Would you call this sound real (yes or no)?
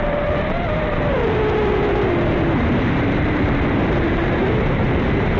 no